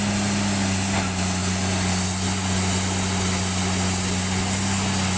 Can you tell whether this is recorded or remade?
recorded